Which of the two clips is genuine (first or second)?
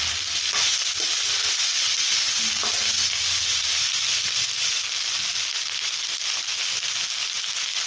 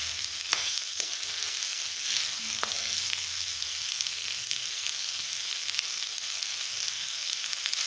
first